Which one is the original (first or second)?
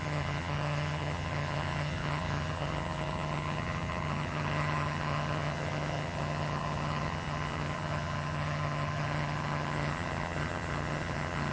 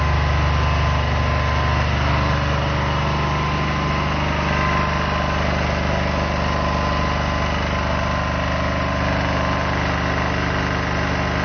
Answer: second